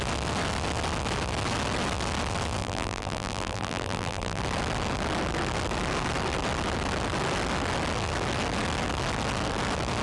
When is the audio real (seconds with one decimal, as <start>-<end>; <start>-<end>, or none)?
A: 0.0-2.6; 4.4-10.0